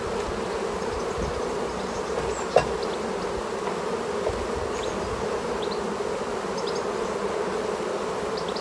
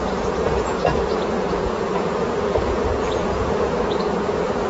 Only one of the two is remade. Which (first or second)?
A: second